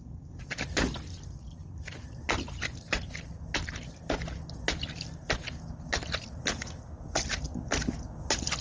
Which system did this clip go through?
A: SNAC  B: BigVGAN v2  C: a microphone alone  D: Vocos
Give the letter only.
C